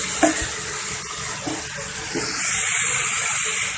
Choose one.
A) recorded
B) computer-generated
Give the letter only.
A